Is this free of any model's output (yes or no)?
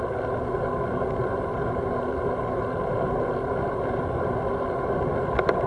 yes